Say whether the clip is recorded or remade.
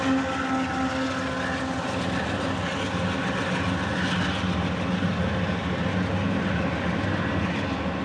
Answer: recorded